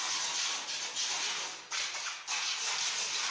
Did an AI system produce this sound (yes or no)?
no